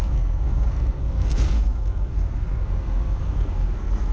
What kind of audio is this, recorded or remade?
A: remade